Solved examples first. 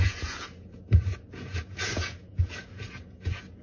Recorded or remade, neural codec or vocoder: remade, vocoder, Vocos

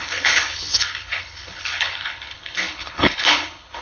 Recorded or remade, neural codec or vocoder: remade, codec, HILCodec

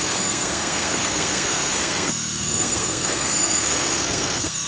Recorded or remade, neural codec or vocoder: remade, codec, SNAC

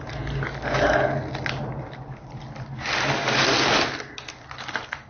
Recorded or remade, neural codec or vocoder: recorded